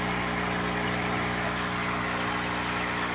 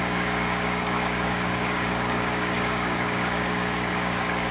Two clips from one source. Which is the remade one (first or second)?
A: second